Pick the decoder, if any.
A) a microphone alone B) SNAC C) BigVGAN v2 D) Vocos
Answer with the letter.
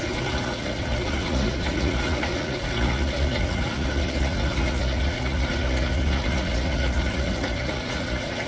D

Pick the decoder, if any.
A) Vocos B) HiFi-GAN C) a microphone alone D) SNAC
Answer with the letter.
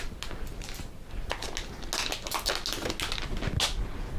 C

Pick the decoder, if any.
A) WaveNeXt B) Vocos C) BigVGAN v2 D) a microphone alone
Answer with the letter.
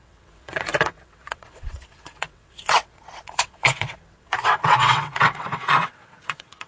A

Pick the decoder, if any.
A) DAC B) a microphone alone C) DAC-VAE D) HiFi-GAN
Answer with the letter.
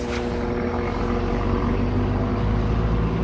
B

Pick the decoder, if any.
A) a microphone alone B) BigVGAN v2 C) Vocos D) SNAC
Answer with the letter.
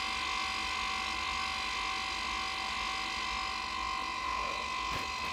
A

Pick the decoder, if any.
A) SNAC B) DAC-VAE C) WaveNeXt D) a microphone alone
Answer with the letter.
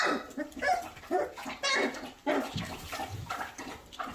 D